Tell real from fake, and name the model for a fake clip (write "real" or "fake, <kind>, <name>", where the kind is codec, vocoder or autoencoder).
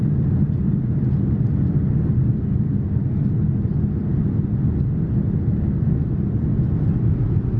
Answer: real